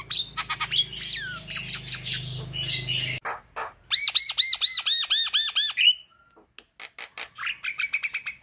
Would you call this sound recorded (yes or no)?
yes